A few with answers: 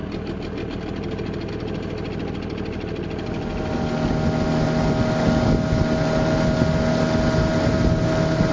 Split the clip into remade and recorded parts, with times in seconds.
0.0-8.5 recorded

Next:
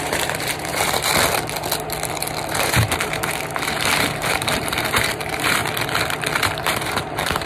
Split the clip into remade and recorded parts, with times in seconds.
0.0-1.1 remade; 1.1-2.5 recorded; 2.5-5.6 remade; 5.6-6.6 recorded; 6.6-7.5 remade